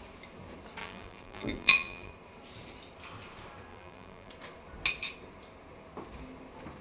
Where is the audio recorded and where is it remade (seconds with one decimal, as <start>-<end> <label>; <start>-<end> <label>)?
0.0-0.8 recorded; 0.8-2.1 remade; 2.1-3.7 recorded; 3.7-4.3 remade; 4.3-6.8 recorded